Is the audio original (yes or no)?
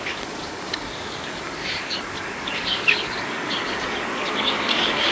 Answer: no